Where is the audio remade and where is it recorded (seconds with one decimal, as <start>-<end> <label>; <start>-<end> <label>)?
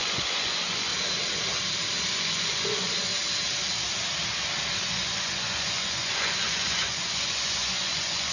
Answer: 0.0-0.9 remade; 0.9-2.1 recorded; 2.1-3.1 remade; 3.1-4.8 recorded; 4.8-8.3 remade